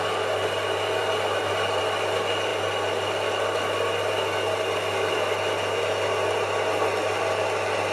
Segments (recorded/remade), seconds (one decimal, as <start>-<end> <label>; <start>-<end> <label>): 0.0-7.9 recorded